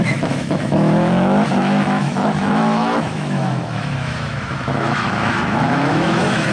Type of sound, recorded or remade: remade